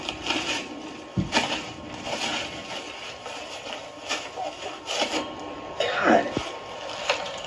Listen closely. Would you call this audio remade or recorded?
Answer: remade